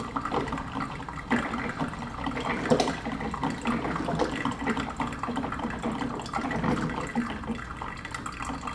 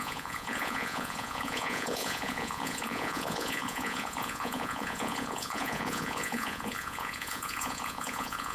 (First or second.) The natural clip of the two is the first